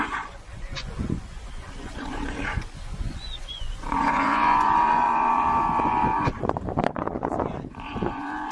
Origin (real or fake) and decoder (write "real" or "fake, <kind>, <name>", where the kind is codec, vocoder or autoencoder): fake, vocoder, Vocos